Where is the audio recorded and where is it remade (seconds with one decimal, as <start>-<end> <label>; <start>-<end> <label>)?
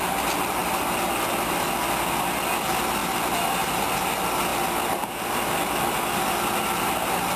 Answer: 0.0-0.6 recorded; 0.6-1.5 remade; 1.5-3.0 recorded; 3.0-4.0 remade; 4.0-7.4 recorded